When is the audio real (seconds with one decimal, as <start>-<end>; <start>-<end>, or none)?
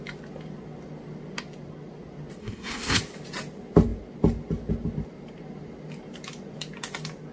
0.0-2.4; 3.0-7.3